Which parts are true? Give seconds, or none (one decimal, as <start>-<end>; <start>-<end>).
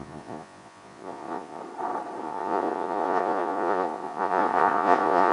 1.6-2.2